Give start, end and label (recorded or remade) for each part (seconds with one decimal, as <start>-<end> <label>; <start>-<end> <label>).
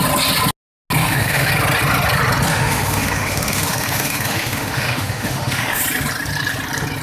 0.0-1.0 recorded; 1.0-1.5 remade; 1.5-2.5 recorded; 2.5-5.8 remade; 5.8-7.0 recorded